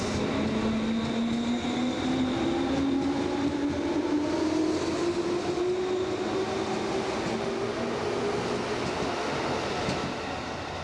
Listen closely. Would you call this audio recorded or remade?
recorded